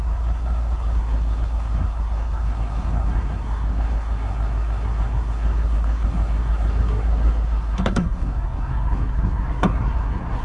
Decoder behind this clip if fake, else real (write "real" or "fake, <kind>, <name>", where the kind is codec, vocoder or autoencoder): fake, codec, SNAC